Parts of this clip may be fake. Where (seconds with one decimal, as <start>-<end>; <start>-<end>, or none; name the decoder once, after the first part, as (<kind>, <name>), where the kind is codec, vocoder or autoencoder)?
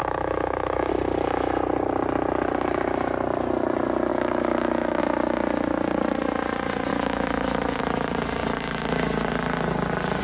0.0-0.9 (autoencoder, DAC-VAE); 4.1-5.0; 6.9-7.8